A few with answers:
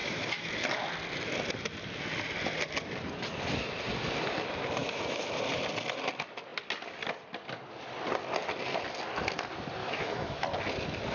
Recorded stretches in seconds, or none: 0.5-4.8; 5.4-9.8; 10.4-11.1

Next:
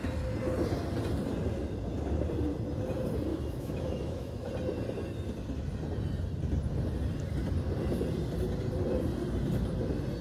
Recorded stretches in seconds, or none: 0.0-3.3; 4.5-10.2

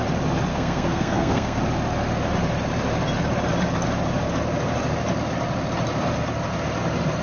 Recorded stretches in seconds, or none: 0.0-0.5; 1.6-7.2

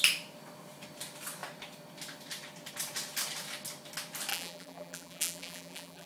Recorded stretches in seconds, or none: 0.0-4.3